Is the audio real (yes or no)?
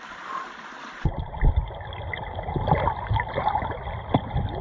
yes